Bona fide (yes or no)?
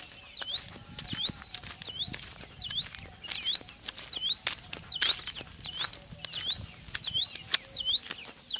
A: yes